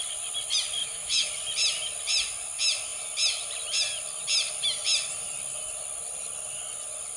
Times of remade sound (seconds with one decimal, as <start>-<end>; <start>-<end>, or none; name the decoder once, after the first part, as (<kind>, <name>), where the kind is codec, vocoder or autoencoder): 0.8-1.3 (autoencoder, DAC-VAE)